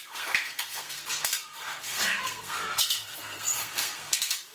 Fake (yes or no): yes